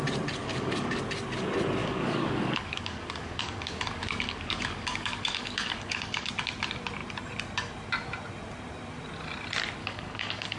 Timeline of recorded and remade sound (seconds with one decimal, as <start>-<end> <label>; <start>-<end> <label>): 0.0-0.4 recorded; 0.4-1.0 remade; 1.0-1.8 recorded; 1.8-6.3 remade; 6.3-9.8 recorded; 9.8-10.6 remade

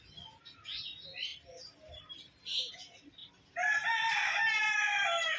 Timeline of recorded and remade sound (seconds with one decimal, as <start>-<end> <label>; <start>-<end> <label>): 0.0-5.4 recorded

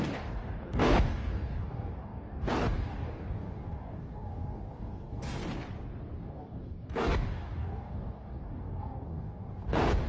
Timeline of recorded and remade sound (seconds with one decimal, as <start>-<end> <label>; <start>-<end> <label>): 0.0-5.4 remade; 5.4-6.2 recorded; 6.2-10.1 remade

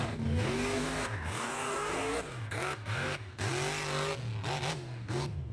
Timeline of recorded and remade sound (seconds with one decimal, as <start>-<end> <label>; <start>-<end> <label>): 0.0-3.5 remade; 3.5-4.7 recorded; 4.7-5.5 remade

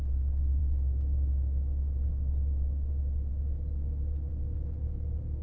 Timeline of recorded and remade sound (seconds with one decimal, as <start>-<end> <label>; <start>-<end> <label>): 0.0-5.4 recorded